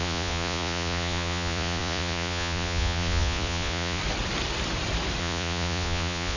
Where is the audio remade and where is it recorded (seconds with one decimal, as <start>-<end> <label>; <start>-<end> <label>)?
0.0-4.0 remade; 4.0-5.2 recorded; 5.2-6.4 remade

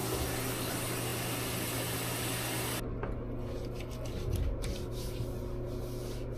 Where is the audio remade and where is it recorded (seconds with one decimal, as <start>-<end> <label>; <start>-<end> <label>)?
0.0-6.4 recorded

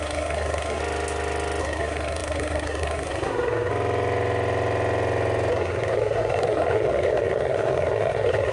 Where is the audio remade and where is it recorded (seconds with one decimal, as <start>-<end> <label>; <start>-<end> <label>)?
0.0-0.8 remade; 0.8-1.6 recorded; 1.6-3.7 remade; 3.7-5.5 recorded; 5.5-8.5 remade

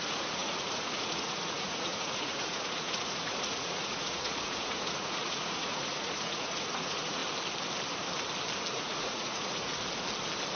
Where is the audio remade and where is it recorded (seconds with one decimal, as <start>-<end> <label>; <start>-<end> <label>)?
0.0-7.2 remade; 7.2-8.7 recorded; 8.7-9.8 remade; 9.8-10.6 recorded

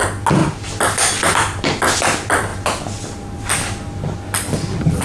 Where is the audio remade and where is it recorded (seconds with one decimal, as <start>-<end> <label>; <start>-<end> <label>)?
0.0-0.4 recorded; 0.4-1.8 remade; 1.8-5.0 recorded

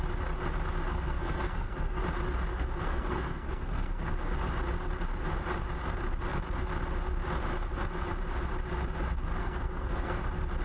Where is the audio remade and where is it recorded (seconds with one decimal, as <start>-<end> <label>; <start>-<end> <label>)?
0.0-0.9 recorded; 0.9-2.0 remade; 2.0-2.5 recorded; 2.5-4.1 remade; 4.1-9.4 recorded; 9.4-10.2 remade; 10.2-10.6 recorded

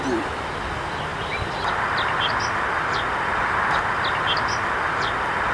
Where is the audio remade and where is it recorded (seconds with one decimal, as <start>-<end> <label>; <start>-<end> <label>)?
0.0-1.1 recorded; 1.1-2.3 remade; 2.3-5.5 recorded

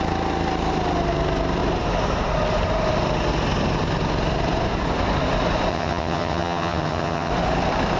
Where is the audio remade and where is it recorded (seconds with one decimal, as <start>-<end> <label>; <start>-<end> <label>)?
0.0-5.7 recorded; 5.7-7.3 remade; 7.3-8.0 recorded